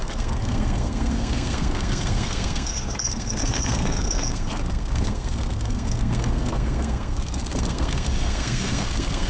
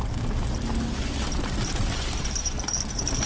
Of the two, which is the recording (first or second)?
second